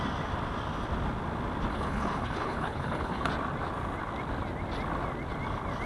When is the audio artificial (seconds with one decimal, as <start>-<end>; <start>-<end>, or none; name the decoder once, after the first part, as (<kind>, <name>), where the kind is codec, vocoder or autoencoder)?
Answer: 1.7-3.3 (codec, HILCodec)